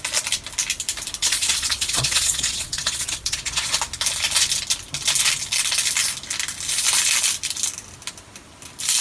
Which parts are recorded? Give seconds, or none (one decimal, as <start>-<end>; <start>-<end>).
0.0-1.2; 3.7-9.0